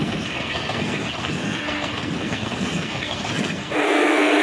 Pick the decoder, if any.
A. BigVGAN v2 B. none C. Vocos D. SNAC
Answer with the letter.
D